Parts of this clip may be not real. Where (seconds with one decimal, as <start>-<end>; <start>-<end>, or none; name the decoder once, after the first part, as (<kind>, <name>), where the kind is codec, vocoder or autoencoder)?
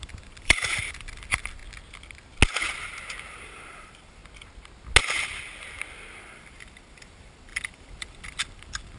0.0-1.6 (vocoder, BigVGAN v2); 3.3-4.2; 6.2-9.0